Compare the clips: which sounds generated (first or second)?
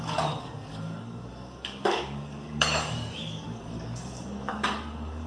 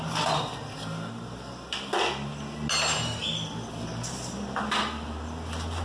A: first